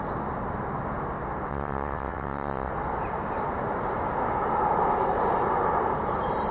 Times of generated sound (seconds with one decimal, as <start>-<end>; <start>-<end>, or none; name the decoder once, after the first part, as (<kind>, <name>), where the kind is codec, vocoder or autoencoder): 1.5-2.7 (vocoder, WaveNeXt)